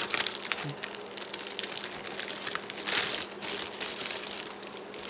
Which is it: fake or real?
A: real